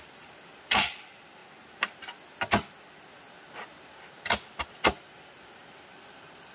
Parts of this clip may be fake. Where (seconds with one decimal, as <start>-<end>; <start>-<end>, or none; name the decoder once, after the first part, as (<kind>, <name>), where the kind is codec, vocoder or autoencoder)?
0.0-1.4 (vocoder, BigVGAN v2); 4.7-6.5